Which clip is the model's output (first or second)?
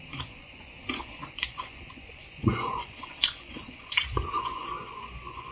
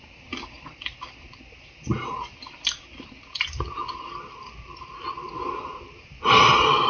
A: first